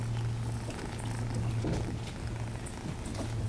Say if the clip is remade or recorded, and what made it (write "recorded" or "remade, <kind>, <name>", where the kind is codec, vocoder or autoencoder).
recorded